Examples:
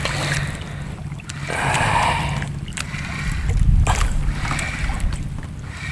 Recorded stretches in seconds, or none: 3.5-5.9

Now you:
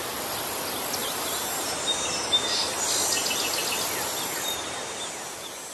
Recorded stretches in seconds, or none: 0.0-1.0; 1.9-5.7

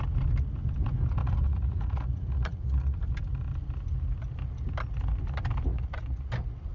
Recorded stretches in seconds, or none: 0.0-1.2; 3.0-5.7; 6.3-6.7

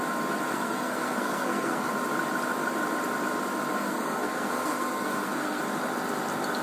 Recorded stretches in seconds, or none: 0.0-0.5; 1.9-3.7; 5.6-6.6

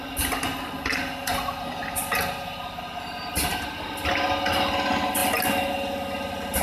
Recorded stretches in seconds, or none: 0.0-6.6

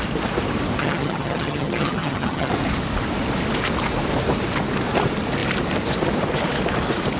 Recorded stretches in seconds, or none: 0.0-0.8; 2.5-7.2

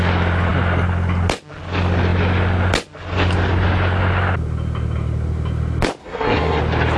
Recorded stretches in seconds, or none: 0.0-6.0; 6.6-7.0